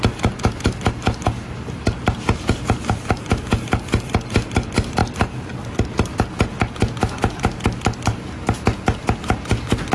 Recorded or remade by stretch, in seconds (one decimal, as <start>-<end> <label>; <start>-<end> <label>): 0.0-9.9 recorded